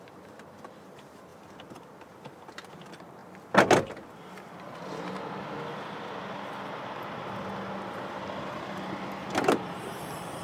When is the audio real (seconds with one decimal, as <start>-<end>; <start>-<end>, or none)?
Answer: 3.2-8.1

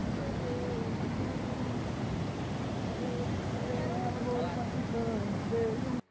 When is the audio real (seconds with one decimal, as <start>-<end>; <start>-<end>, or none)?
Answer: 0.0-6.1